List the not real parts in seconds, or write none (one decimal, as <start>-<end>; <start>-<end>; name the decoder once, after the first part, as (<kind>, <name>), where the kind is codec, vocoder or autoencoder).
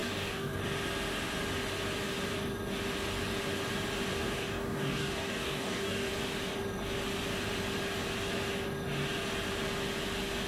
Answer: 0.0-0.6 (codec, DAC); 4.1-6.1